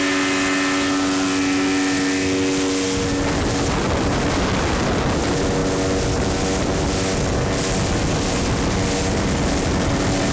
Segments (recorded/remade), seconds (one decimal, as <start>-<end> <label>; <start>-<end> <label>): 0.0-10.3 recorded